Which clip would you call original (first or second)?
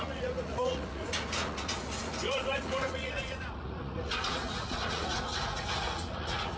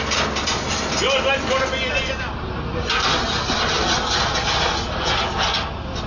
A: second